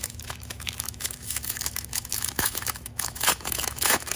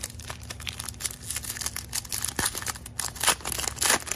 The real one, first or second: second